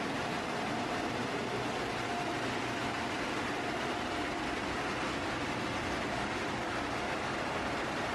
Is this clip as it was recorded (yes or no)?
yes